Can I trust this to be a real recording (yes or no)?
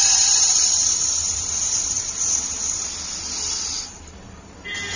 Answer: no